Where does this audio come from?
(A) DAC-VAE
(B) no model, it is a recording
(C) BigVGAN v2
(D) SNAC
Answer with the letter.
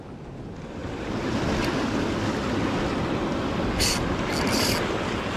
B